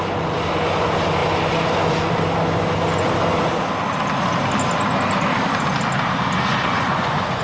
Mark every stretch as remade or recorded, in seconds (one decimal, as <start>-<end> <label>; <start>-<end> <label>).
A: 0.0-6.5 recorded; 6.5-7.4 remade